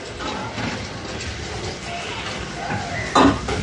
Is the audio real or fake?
fake